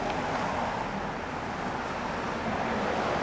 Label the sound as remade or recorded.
recorded